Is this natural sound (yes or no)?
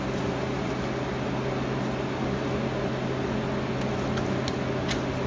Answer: yes